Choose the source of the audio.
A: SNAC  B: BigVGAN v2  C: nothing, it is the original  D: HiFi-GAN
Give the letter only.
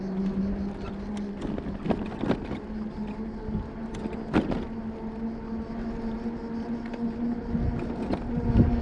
C